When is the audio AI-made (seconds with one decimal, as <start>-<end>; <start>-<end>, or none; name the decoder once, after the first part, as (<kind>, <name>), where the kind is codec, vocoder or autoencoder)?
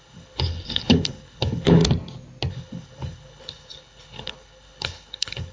0.0-1.8 (codec, HILCodec); 2.5-5.5